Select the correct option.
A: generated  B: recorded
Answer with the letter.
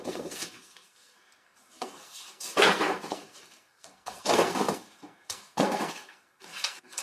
A